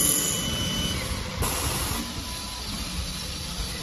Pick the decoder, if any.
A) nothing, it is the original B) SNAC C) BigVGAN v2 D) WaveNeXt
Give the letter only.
A